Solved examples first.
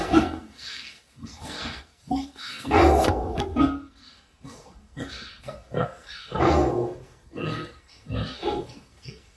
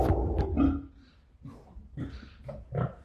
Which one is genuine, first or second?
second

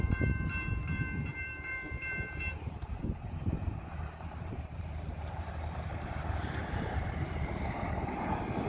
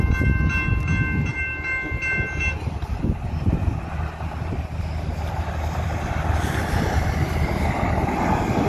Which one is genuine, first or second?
second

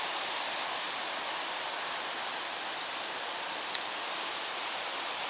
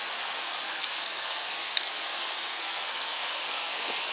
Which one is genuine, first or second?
first